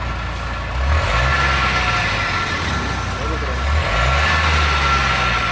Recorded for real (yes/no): yes